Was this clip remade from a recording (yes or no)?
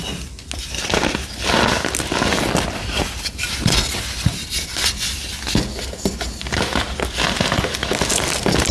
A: no